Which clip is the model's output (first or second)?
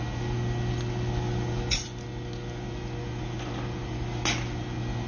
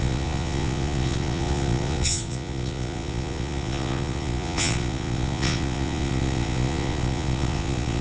second